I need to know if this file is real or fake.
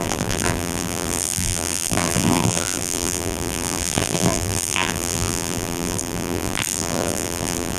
fake